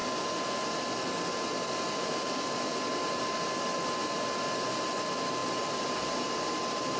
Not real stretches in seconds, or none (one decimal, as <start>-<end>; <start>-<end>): none